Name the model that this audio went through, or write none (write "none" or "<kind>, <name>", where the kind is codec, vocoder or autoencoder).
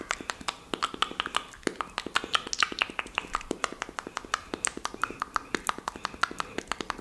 none